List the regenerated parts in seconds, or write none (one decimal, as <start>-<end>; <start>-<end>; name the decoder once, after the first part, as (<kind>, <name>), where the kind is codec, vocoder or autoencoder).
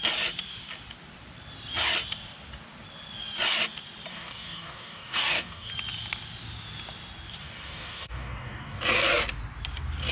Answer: 4.1-5.7 (codec, DAC); 7.4-8.8